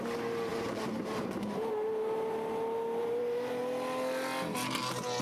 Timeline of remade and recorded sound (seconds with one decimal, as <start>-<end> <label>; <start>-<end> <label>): 0.0-0.5 recorded; 0.5-1.7 remade; 1.7-3.0 recorded; 3.0-3.6 remade; 3.6-5.2 recorded